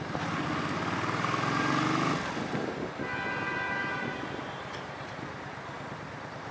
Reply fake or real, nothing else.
real